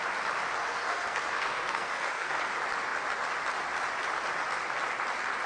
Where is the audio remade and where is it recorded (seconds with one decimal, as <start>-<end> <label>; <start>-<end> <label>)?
0.0-0.6 recorded; 0.6-2.5 remade; 2.5-5.5 recorded